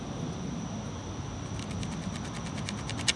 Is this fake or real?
real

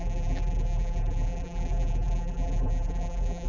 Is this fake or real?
fake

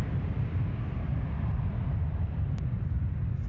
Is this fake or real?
fake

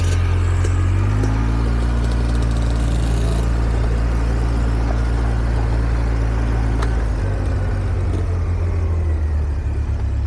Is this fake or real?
real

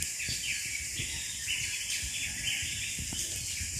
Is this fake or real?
real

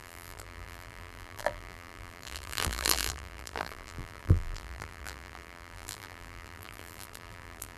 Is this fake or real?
fake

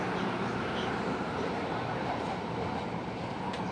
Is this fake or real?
fake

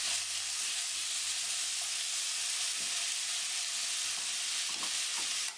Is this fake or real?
real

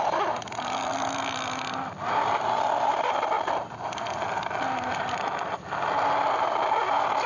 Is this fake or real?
real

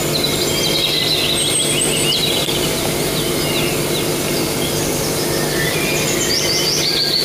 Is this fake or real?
real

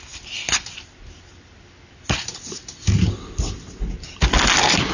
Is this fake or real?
real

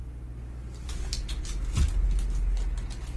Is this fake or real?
real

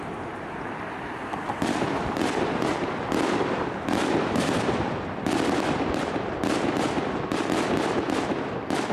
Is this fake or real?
real